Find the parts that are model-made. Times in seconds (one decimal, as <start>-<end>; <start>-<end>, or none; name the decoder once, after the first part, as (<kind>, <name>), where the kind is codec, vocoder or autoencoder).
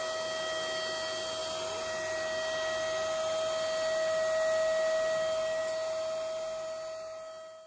none